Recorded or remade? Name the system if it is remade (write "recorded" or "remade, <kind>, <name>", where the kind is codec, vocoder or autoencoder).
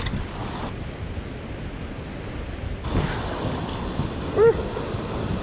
recorded